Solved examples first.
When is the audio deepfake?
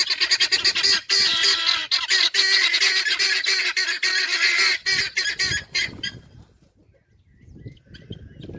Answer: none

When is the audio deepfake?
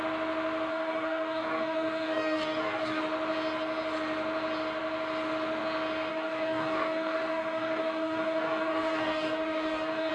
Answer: 0.7-3.0; 6.1-10.1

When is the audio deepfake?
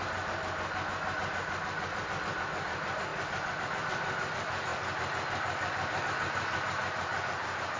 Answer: 0.0-3.1; 3.6-7.8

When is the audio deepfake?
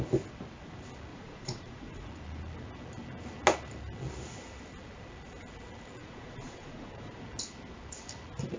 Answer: 1.1-2.1; 6.0-7.2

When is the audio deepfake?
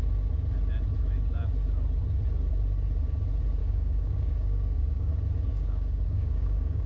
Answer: 3.6-5.1; 5.5-6.9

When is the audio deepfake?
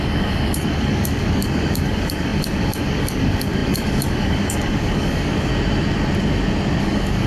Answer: 0.0-5.5; 6.8-7.3